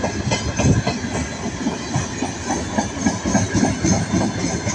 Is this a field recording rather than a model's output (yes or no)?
yes